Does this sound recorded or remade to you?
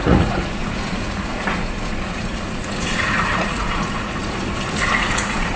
remade